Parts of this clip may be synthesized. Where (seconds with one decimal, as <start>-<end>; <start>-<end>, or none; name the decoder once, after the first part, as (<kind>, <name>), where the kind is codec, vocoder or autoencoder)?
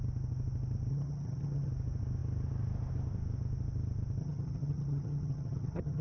0.9-1.7 (vocoder, HiFi-GAN); 4.2-6.0